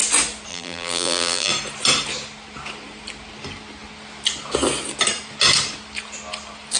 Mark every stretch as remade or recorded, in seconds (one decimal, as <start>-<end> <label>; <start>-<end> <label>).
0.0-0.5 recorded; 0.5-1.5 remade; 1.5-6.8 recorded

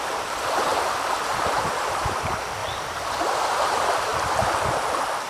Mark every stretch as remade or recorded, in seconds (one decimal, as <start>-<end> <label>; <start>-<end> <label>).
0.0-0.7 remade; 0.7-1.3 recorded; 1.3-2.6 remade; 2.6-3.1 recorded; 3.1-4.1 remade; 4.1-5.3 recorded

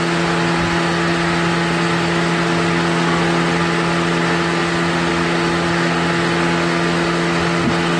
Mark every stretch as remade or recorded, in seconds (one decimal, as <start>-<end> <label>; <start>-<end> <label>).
0.0-8.0 recorded

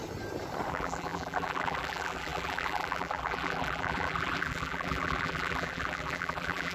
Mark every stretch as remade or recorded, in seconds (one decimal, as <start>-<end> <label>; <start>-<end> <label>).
0.0-0.7 recorded; 0.7-6.7 remade

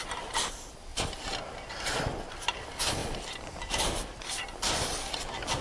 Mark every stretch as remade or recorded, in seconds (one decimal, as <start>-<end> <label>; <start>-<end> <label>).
0.0-0.9 recorded; 0.9-2.4 remade; 2.4-3.0 recorded; 3.0-4.3 remade; 4.3-5.6 recorded

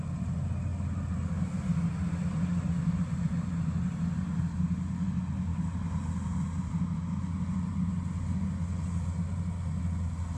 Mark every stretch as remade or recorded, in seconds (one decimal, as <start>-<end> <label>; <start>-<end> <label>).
0.0-10.4 recorded

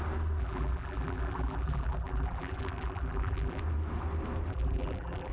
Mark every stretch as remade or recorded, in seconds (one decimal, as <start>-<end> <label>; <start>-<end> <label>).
0.0-0.4 recorded; 0.4-3.6 remade; 3.6-4.5 recorded; 4.5-5.3 remade

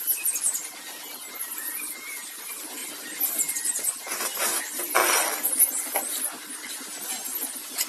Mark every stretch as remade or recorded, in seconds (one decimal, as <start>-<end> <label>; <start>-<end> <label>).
0.0-7.9 recorded